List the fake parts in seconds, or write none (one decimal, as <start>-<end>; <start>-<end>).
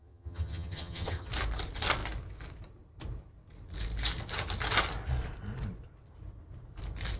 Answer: 0.0-1.3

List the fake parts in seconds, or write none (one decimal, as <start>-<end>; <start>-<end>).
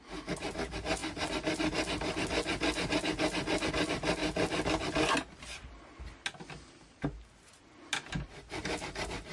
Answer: none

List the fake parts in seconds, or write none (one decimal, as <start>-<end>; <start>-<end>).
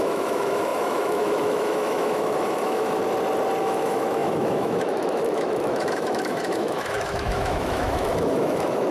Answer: 0.0-3.0; 3.6-8.9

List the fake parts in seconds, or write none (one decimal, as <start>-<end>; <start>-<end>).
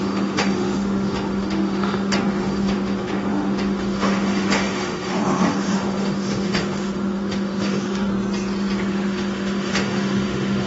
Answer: 0.0-8.1; 8.9-10.7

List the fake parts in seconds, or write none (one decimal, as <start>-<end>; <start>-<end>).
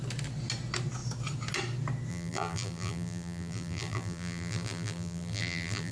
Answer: 2.1-5.9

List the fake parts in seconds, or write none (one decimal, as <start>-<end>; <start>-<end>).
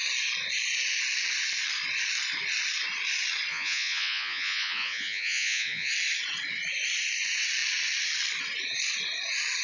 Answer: 3.5-5.9